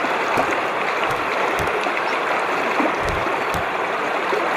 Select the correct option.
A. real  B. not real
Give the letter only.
B